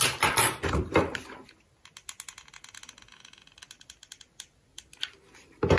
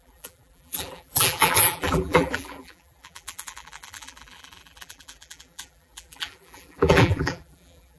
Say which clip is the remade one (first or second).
second